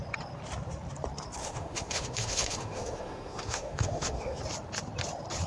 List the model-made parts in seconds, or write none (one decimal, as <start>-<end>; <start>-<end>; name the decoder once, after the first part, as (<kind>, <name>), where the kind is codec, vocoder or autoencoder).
1.4-4.4 (autoencoder, DAC-VAE)